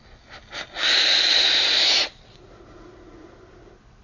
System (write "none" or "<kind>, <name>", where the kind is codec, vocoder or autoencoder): none